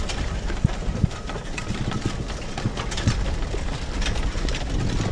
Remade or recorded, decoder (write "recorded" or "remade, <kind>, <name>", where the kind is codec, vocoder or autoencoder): recorded